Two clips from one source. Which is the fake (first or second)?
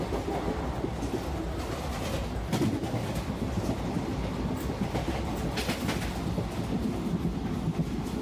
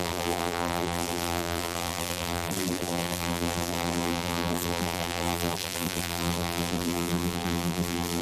second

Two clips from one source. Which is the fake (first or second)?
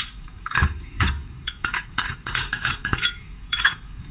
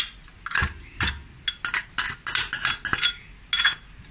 first